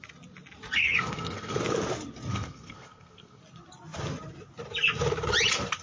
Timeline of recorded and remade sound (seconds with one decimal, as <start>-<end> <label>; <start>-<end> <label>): 0.0-0.8 recorded; 0.8-1.6 remade; 1.6-2.3 recorded; 2.3-3.4 remade; 3.4-5.8 recorded